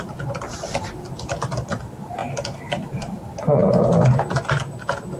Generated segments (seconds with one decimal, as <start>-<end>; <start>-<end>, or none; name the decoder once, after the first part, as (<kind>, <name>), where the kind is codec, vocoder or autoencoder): none